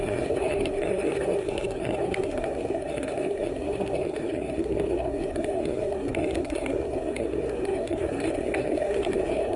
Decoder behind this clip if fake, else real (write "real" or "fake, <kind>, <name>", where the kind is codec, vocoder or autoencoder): fake, codec, SNAC